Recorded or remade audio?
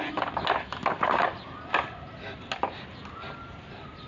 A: recorded